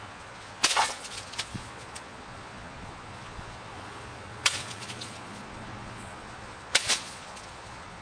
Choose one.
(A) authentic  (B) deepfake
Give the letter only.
B